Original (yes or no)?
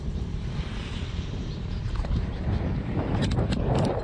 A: no